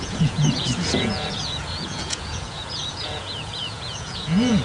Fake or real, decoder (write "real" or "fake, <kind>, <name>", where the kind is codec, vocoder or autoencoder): fake, vocoder, Vocos